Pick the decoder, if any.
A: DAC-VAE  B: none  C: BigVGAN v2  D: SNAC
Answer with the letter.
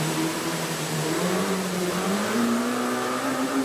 C